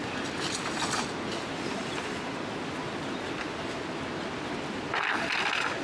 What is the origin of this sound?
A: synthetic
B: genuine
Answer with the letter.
B